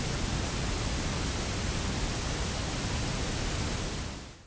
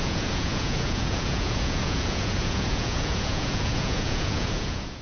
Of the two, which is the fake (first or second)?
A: second